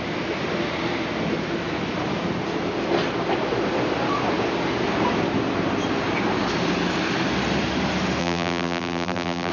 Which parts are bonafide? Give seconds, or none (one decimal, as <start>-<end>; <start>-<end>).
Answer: 0.0-8.2